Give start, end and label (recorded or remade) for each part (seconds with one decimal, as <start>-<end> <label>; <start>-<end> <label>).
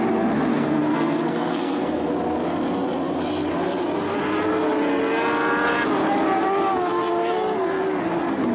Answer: 0.0-0.5 recorded; 0.5-2.1 remade; 2.1-8.5 recorded